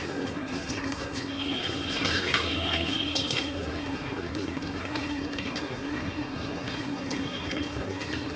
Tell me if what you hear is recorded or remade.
remade